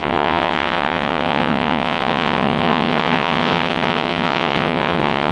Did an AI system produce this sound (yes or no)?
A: yes